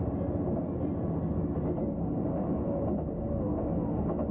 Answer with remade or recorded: recorded